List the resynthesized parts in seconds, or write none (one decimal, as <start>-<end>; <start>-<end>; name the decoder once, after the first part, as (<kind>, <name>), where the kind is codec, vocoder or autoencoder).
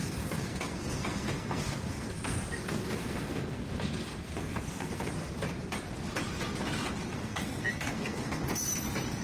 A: 0.0-5.1 (codec, SNAC); 7.1-8.4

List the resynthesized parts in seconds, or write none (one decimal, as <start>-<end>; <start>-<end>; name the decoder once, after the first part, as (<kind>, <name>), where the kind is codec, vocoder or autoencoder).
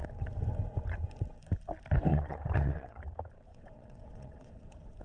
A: 2.1-3.0 (vocoder, WaveNeXt); 3.5-4.5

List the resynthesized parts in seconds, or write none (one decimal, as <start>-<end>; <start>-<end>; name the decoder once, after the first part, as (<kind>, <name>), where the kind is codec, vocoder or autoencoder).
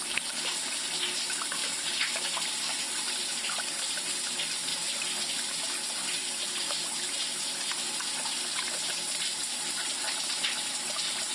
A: none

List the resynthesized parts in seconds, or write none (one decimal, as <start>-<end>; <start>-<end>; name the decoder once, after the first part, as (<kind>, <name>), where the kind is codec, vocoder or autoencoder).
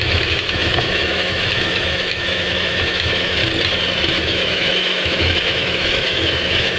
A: 0.0-3.4 (autoencoder, DAC-VAE); 4.1-6.8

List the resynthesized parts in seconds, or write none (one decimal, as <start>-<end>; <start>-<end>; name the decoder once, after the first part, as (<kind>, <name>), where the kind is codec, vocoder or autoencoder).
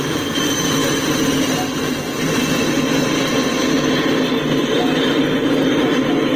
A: none